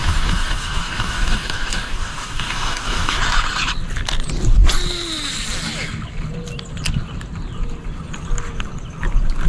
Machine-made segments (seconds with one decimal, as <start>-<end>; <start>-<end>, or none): 0.0-3.2